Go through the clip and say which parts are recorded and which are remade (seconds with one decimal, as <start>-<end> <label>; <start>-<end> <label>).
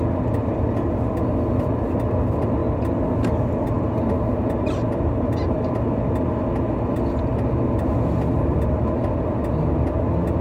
0.0-10.4 recorded